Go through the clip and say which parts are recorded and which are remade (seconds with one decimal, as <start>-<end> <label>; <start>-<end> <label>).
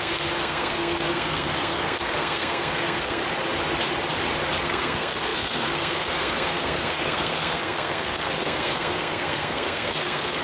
0.0-3.2 remade; 3.2-4.6 recorded; 4.6-10.4 remade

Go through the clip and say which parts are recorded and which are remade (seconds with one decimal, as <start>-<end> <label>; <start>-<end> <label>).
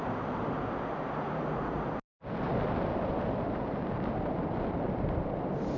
0.0-5.8 recorded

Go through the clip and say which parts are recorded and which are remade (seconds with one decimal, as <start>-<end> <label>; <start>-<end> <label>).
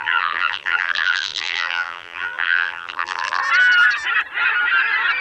0.0-3.4 remade; 3.4-5.2 recorded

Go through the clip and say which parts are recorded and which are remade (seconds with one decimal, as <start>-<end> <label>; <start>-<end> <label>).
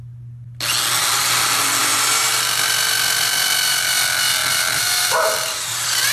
0.0-1.8 recorded; 1.8-3.9 remade; 3.9-4.4 recorded; 4.4-6.1 remade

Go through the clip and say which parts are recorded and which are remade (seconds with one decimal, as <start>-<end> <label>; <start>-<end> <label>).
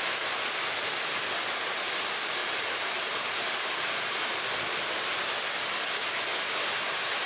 0.0-2.4 recorded; 2.4-3.0 remade; 3.0-7.3 recorded